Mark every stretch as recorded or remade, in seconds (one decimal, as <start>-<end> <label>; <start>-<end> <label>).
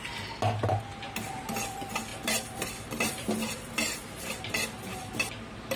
0.0-2.1 recorded; 2.1-4.4 remade; 4.4-5.8 recorded